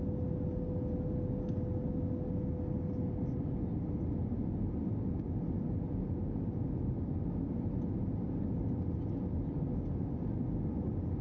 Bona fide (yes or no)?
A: yes